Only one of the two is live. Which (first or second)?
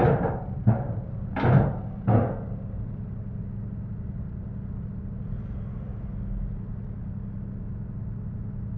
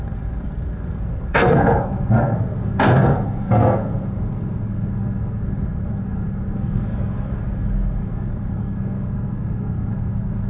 first